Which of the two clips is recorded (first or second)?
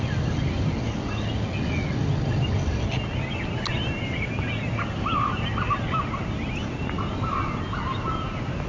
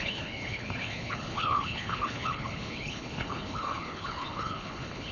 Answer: first